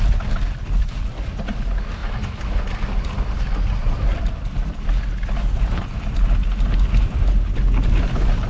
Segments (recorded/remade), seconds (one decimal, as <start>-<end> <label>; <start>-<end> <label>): 0.0-8.5 recorded